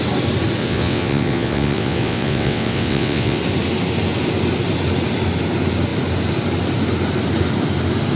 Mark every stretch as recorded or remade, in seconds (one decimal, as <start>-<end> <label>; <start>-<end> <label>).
0.0-0.6 recorded; 0.6-3.4 remade; 3.4-8.2 recorded